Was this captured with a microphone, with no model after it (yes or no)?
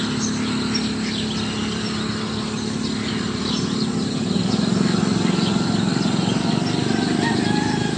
yes